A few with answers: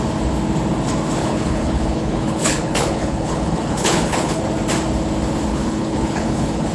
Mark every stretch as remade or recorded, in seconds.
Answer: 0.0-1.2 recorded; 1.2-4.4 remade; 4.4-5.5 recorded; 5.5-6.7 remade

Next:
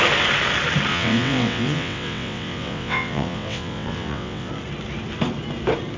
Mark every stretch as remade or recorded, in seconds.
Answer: 0.0-0.9 recorded; 0.9-4.5 remade; 4.5-6.0 recorded

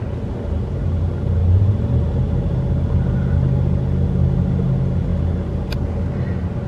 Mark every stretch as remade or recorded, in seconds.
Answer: 0.0-6.7 recorded